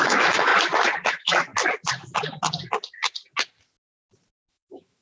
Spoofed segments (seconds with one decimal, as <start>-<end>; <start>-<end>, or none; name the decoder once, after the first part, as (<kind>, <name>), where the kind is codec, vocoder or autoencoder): 0.0-0.5 (autoencoder, DAC-VAE); 1.1-1.5; 4.5-5.0

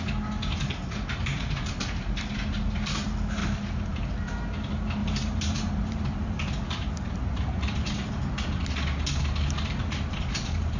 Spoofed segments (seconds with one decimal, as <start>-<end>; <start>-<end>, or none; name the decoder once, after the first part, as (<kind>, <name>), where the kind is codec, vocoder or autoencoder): 3.4-4.1 (vocoder, BigVGAN v2); 5.0-6.3

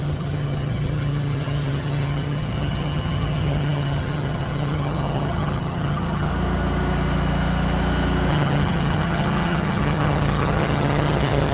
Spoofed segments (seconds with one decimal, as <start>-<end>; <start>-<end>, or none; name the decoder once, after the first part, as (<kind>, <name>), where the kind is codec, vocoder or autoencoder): 0.0-6.3 (vocoder, HiFi-GAN); 8.3-11.5

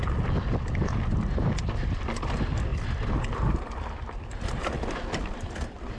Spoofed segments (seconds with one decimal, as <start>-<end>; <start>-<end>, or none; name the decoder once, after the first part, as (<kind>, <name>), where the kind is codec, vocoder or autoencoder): none

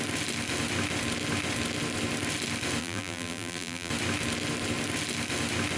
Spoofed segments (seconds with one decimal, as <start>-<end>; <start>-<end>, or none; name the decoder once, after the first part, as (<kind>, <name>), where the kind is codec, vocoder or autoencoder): 2.8-3.9 (vocoder, BigVGAN v2)

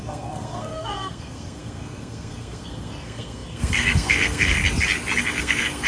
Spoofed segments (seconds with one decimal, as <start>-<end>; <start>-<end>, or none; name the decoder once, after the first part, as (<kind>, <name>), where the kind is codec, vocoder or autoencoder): 0.0-4.6 (codec, SNAC); 5.2-5.9

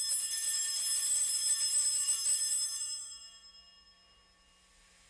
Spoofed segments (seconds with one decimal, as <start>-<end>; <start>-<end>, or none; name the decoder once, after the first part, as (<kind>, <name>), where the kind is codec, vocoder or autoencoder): none

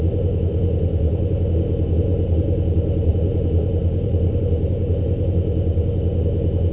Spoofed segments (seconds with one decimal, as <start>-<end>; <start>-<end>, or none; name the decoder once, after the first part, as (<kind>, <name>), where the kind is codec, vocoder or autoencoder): 0.5-1.3 (vocoder, BigVGAN v2); 3.8-4.4